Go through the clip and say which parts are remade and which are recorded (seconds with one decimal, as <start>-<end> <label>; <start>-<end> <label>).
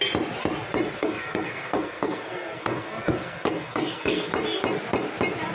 0.0-1.0 recorded; 1.0-4.3 remade; 4.3-5.5 recorded